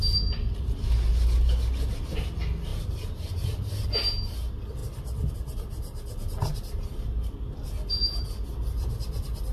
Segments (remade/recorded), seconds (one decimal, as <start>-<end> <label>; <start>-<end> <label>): 0.0-2.7 recorded; 2.7-3.3 remade; 3.3-4.8 recorded; 4.8-5.3 remade; 5.3-9.5 recorded